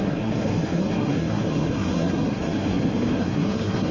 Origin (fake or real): fake